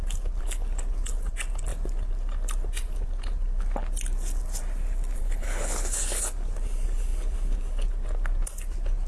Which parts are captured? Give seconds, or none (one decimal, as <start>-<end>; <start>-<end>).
0.0-5.2; 6.2-9.1